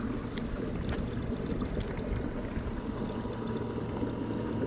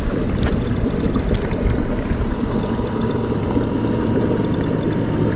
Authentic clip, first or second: first